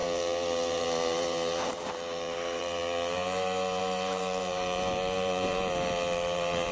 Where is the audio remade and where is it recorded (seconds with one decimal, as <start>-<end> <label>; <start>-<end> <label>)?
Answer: 0.0-6.7 remade